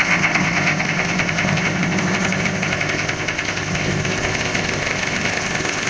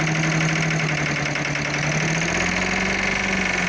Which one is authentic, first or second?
second